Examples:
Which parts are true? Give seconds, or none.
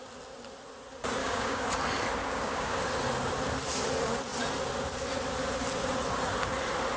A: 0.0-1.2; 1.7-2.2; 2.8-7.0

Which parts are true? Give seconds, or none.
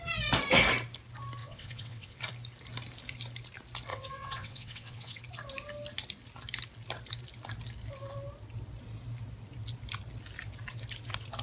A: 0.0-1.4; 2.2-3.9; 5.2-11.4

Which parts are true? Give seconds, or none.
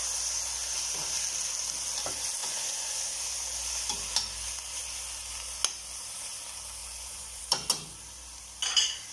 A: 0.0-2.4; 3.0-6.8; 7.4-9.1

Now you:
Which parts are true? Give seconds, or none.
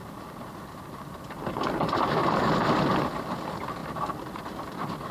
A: none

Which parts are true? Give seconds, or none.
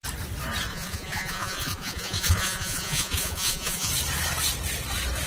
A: 0.0-0.7; 3.9-5.3